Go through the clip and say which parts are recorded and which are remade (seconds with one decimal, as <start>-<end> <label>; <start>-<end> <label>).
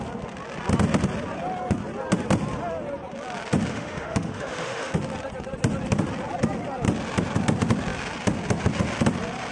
0.0-3.7 recorded; 3.7-4.9 remade; 4.9-9.5 recorded